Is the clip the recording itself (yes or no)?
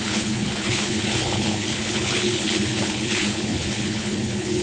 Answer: no